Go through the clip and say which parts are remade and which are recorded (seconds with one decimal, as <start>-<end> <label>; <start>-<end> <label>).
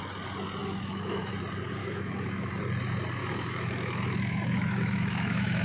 0.0-0.6 recorded; 0.6-1.3 remade; 1.3-1.8 recorded; 1.8-2.5 remade; 2.5-3.2 recorded; 3.2-5.6 remade